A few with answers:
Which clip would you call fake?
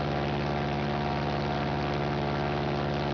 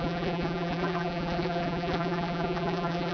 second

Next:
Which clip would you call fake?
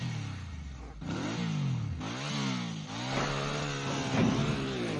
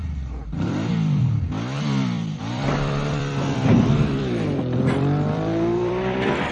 second